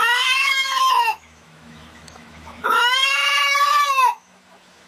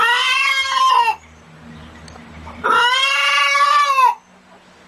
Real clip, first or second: second